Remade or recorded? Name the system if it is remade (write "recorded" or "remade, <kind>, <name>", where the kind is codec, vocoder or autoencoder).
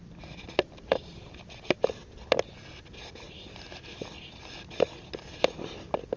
recorded